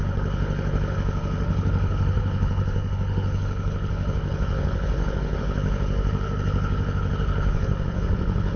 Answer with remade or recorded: remade